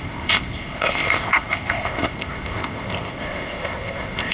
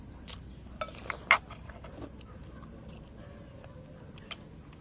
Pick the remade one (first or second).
first